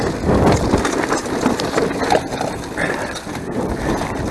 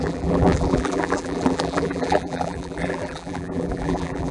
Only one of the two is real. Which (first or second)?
first